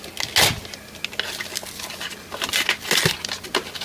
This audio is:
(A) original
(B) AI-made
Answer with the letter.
A